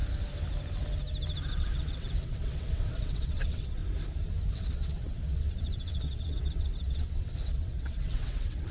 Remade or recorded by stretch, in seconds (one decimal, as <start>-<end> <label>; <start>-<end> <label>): 0.0-1.5 recorded; 1.5-3.8 remade; 3.8-4.5 recorded; 4.5-8.7 remade